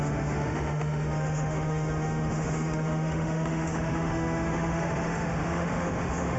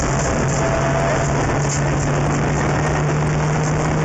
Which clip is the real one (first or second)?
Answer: second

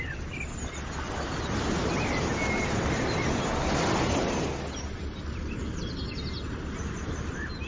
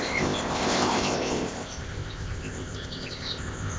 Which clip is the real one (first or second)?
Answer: first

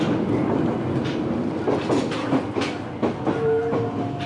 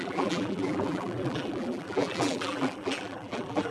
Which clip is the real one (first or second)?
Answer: first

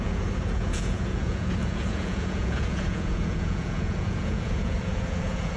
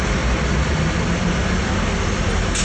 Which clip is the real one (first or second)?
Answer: second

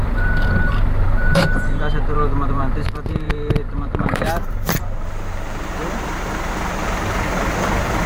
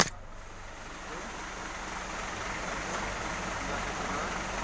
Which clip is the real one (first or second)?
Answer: second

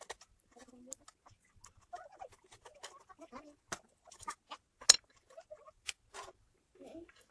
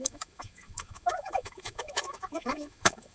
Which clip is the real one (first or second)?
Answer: first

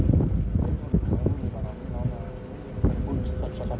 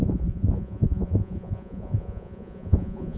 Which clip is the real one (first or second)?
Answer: first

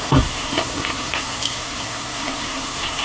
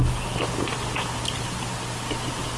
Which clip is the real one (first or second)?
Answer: second